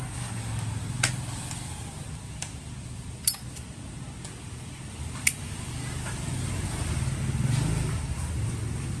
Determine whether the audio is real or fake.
real